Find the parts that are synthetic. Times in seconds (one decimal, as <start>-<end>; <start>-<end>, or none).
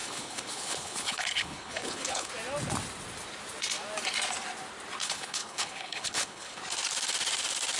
0.0-2.3; 5.0-6.6